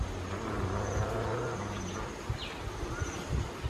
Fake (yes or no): no